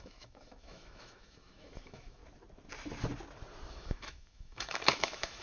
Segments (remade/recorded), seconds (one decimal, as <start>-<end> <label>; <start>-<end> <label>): 0.0-2.2 remade; 2.2-3.7 recorded; 3.7-5.4 remade